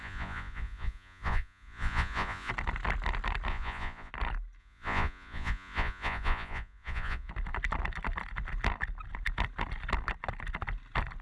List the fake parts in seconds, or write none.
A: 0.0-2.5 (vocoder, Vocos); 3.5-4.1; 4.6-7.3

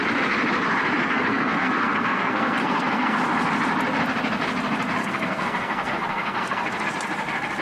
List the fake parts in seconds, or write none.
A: 1.0-3.2 (codec, SNAC); 5.0-6.8

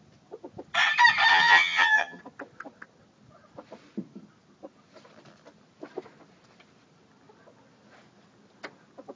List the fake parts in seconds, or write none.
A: 1.3-2.2 (vocoder, HiFi-GAN)

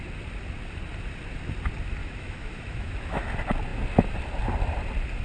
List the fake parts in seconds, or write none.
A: 2.0-3.2 (autoencoder, DAC-VAE)

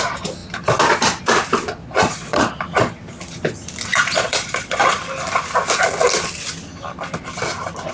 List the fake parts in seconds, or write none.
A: 1.8-2.6 (vocoder, Vocos); 3.9-5.0

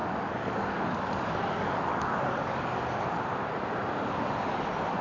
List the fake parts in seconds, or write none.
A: 0.0-2.8 (codec, DAC)